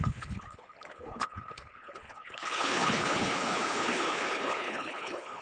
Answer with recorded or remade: remade